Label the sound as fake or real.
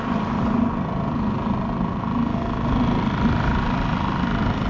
real